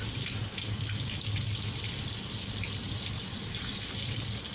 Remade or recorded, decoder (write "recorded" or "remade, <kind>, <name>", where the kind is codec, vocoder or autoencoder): recorded